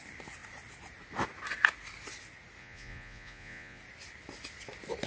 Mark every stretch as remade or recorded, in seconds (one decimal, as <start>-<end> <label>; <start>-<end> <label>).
0.0-2.6 recorded; 2.6-3.8 remade; 3.8-5.1 recorded